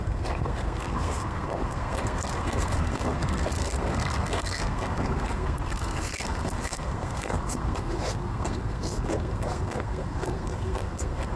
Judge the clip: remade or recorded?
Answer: remade